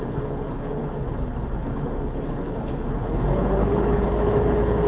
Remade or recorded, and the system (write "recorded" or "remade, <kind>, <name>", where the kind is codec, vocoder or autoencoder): remade, codec, HILCodec